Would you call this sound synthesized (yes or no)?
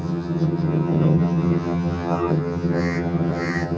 yes